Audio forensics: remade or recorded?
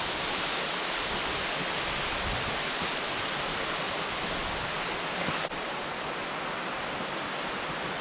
recorded